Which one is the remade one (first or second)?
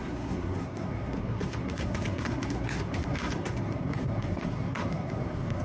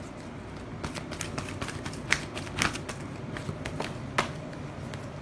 first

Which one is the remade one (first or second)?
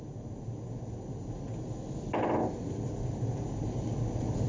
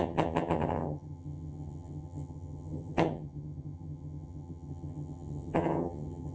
second